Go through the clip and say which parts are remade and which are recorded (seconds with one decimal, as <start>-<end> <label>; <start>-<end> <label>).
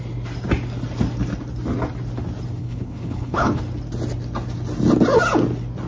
0.0-2.6 recorded; 2.6-3.6 remade; 3.6-5.9 recorded